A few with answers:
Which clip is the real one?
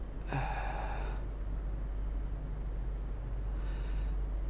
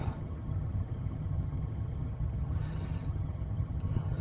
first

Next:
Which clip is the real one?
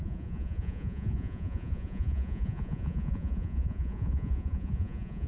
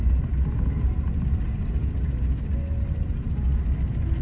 second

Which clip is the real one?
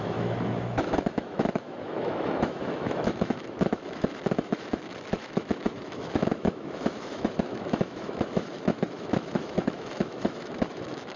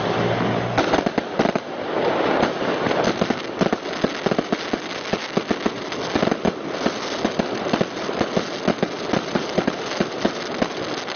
second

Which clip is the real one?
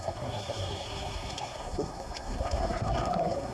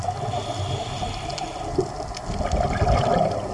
second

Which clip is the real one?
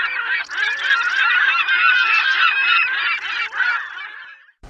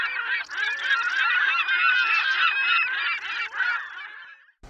second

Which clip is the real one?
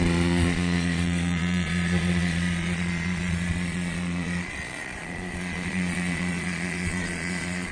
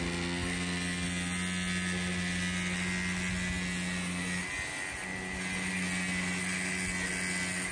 second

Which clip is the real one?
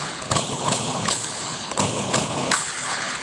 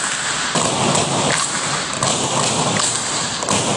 second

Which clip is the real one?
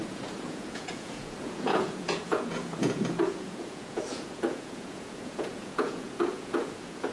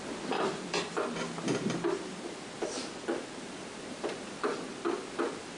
second